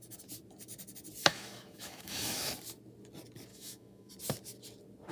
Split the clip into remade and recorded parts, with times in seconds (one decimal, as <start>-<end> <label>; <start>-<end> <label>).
0.0-1.2 recorded; 1.2-2.5 remade; 2.5-3.5 recorded; 3.5-4.1 remade; 4.1-5.1 recorded